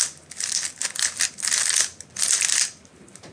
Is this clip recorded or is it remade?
recorded